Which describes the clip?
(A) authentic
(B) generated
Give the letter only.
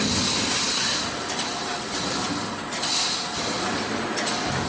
A